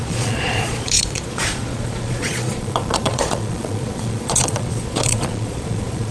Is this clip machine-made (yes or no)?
yes